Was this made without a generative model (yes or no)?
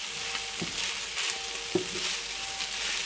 yes